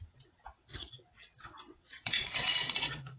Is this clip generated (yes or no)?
yes